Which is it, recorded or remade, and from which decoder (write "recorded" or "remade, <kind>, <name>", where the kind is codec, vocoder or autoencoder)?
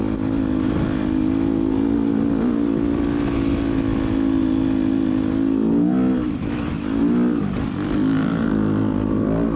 recorded